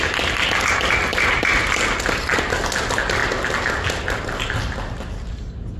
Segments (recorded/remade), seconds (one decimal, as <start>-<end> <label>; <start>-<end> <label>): 0.0-5.8 recorded